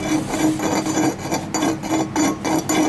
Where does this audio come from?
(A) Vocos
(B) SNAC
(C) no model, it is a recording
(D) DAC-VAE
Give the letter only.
C